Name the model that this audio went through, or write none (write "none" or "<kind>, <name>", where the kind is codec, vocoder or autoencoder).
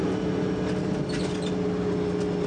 none